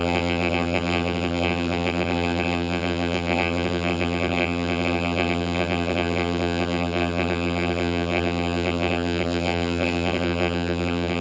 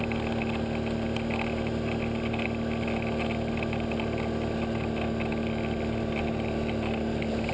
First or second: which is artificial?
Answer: first